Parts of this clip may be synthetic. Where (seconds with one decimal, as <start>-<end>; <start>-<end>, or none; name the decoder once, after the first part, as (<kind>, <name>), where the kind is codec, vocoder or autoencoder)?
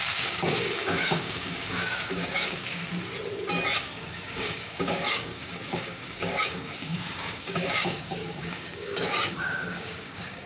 0.0-2.8 (codec, DAC); 3.8-10.5